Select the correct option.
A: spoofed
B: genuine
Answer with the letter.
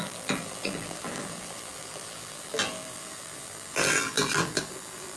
A